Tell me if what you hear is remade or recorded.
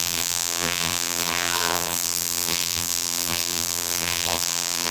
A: remade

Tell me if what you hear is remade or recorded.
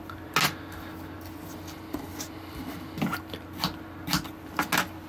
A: recorded